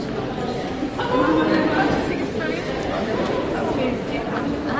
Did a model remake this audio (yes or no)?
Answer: no